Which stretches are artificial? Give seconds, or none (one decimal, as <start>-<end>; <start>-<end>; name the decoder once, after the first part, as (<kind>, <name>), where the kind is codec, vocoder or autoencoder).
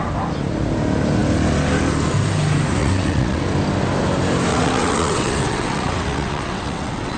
2.8-3.4 (vocoder, WaveNeXt); 4.5-7.2